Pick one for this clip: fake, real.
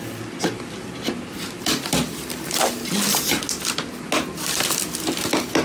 real